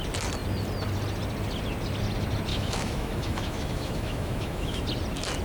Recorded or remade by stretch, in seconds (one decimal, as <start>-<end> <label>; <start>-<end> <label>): 0.0-2.5 recorded; 2.5-4.8 remade; 4.8-5.4 recorded

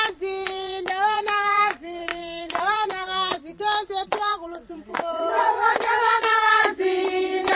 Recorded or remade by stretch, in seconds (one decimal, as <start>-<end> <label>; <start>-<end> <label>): 0.0-7.5 remade

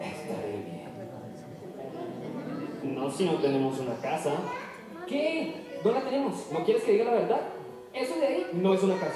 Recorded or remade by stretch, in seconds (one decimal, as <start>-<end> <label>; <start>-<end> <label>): 0.0-0.5 remade; 0.5-1.6 recorded; 1.6-2.9 remade; 2.9-6.1 recorded; 6.1-8.0 remade; 8.0-8.7 recorded; 8.7-9.2 remade

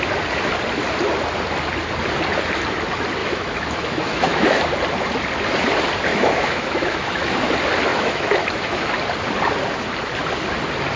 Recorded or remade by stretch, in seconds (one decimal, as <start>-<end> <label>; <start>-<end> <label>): 0.0-3.2 recorded; 3.2-4.6 remade; 4.6-6.1 recorded; 6.1-7.5 remade; 7.5-7.9 recorded; 7.9-8.9 remade; 8.9-11.0 recorded

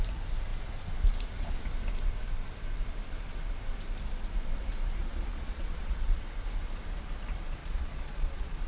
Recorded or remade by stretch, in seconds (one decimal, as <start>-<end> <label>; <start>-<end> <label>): 0.0-5.0 recorded; 5.0-6.1 remade; 6.1-7.6 recorded; 7.6-8.7 remade

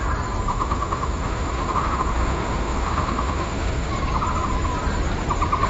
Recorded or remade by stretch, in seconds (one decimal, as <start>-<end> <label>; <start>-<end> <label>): 0.0-0.5 recorded; 0.5-3.9 remade; 3.9-5.7 recorded

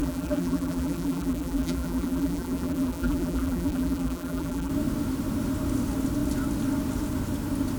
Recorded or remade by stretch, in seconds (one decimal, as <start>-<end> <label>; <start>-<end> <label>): 0.0-4.7 remade; 4.7-7.8 recorded